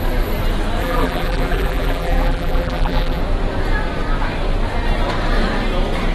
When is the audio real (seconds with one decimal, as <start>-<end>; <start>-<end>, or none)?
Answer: 0.0-0.8; 3.2-6.1